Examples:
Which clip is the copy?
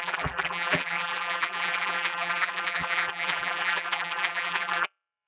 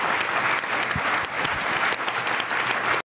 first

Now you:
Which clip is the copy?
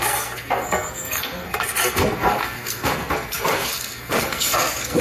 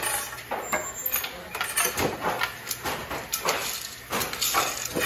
first